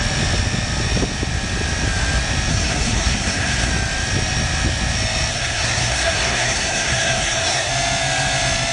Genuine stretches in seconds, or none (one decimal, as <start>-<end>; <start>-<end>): 0.0-2.5; 3.7-5.3; 7.7-8.7

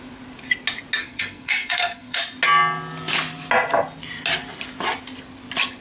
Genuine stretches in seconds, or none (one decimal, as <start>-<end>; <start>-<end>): 0.0-1.0; 2.2-5.8

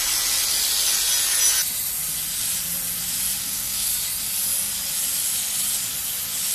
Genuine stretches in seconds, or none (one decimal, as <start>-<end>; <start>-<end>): 0.0-3.4; 3.9-6.5

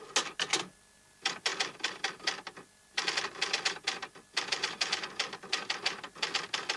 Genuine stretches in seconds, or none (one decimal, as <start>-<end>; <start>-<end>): 0.0-6.8

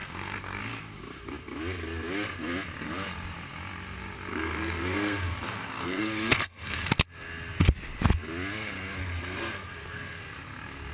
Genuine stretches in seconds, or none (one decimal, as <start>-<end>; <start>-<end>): 0.6-4.3; 6.9-9.0; 10.2-10.9

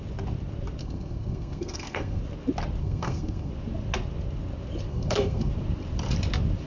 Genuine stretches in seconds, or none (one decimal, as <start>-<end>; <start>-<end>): 0.0-0.8; 2.2-2.8; 3.5-4.9; 5.5-6.7

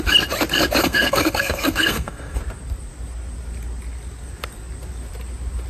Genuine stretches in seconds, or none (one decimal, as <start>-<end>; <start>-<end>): 0.0-0.8; 2.4-5.7

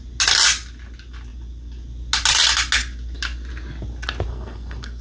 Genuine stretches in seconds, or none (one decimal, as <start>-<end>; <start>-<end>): 0.0-4.3